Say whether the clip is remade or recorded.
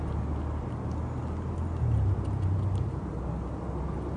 recorded